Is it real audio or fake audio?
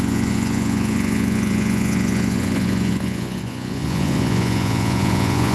fake